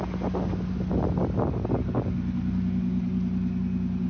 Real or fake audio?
real